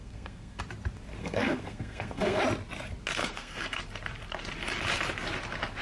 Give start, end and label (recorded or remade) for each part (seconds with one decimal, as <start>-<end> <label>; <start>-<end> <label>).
0.0-0.6 remade; 0.6-1.2 recorded; 1.2-2.4 remade; 2.4-3.2 recorded; 3.2-3.8 remade; 3.8-5.8 recorded